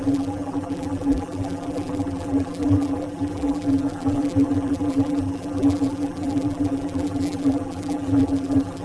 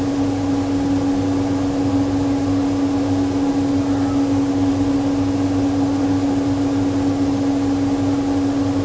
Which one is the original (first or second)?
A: second